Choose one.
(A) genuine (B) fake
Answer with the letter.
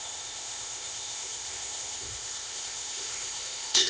B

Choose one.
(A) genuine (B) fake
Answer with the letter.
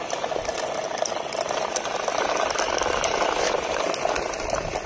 A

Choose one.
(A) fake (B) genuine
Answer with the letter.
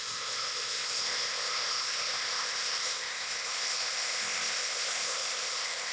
A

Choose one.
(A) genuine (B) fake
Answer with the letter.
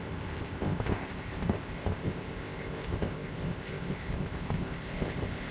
B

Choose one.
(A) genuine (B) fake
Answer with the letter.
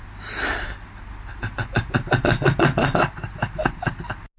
A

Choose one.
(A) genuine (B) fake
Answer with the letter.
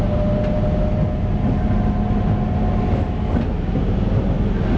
A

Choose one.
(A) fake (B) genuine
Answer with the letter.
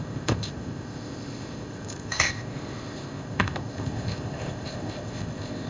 A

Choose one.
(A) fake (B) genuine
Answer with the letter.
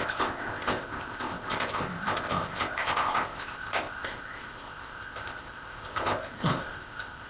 A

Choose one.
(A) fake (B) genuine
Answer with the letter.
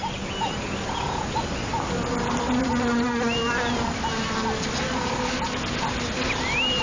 B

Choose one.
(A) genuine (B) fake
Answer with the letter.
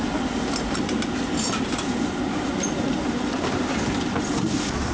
A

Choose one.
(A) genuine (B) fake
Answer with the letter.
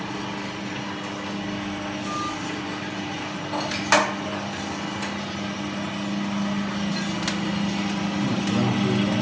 A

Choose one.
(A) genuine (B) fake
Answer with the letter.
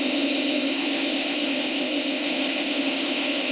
B